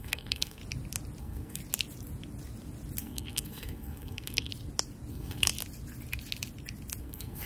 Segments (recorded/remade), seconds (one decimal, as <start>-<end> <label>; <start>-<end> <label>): 0.0-0.6 remade; 0.6-1.2 recorded; 1.2-1.6 remade; 1.6-3.0 recorded; 3.0-4.5 remade; 4.5-5.1 recorded; 5.1-5.5 remade; 5.5-7.0 recorded; 7.0-7.5 remade